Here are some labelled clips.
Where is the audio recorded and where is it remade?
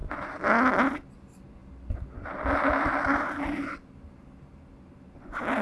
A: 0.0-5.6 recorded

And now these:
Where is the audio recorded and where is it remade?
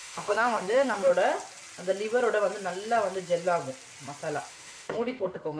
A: 0.0-1.1 remade; 1.1-4.5 recorded; 4.5-5.6 remade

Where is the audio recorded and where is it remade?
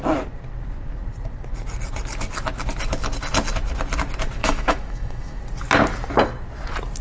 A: 0.0-4.4 recorded; 4.4-5.4 remade; 5.4-7.0 recorded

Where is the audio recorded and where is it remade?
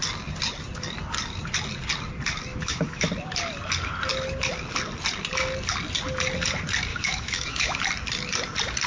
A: 0.0-2.5 recorded; 2.5-3.1 remade; 3.1-6.9 recorded; 6.9-7.8 remade; 7.8-8.9 recorded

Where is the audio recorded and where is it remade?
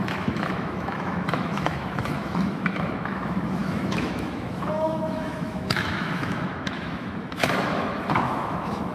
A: 0.0-8.9 remade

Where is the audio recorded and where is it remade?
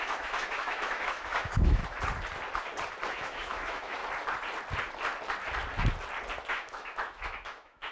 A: 0.0-1.8 remade; 1.8-3.1 recorded; 3.1-4.0 remade; 4.0-6.5 recorded; 6.5-7.9 remade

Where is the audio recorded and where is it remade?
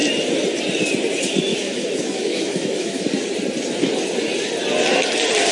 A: 0.0-1.5 recorded; 1.5-3.1 remade; 3.1-5.5 recorded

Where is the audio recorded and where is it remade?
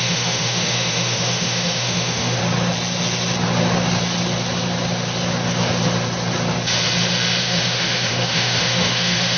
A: 0.0-2.4 remade; 2.4-7.4 recorded; 7.4-9.4 remade